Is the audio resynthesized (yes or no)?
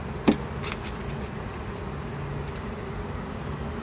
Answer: no